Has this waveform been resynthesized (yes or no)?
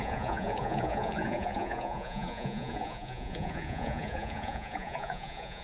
yes